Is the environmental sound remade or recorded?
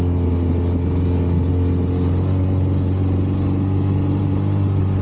recorded